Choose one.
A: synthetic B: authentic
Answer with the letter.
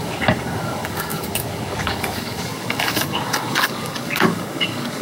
A